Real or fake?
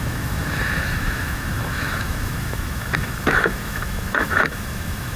fake